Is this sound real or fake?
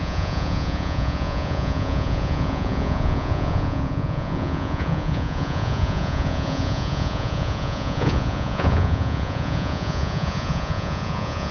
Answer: fake